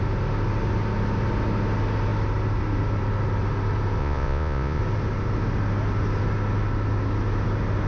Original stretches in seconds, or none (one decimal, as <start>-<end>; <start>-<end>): 0.0-4.0; 4.8-7.9